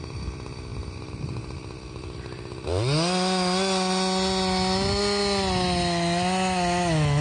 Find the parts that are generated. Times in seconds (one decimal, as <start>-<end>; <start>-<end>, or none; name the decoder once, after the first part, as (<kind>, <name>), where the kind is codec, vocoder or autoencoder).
none